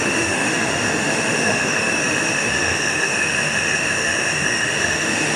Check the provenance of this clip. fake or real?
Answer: fake